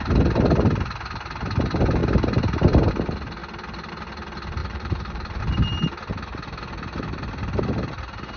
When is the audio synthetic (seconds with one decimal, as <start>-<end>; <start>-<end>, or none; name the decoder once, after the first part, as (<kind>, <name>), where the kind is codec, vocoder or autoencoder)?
4.6-5.4 (vocoder, BigVGAN v2)